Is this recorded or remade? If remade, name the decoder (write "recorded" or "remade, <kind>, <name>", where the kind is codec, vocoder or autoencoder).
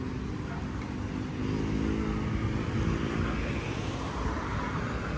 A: recorded